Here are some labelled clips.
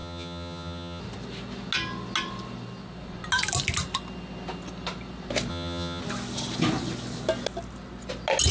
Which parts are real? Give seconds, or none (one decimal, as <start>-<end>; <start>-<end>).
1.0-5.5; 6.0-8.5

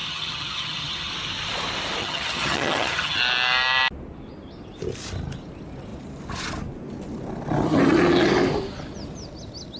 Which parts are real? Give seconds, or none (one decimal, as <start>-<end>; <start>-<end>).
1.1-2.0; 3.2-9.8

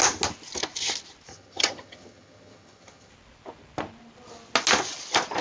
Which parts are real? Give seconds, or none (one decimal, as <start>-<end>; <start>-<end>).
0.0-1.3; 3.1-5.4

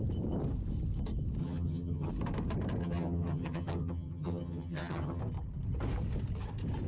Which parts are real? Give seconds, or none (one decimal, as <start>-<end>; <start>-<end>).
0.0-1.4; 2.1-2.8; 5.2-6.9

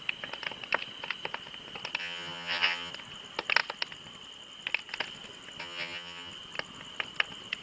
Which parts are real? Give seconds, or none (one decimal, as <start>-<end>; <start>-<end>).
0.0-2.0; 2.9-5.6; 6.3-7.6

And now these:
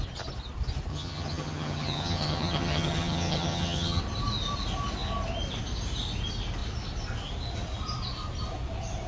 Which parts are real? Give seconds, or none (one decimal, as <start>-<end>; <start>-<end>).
0.0-0.9; 4.0-9.1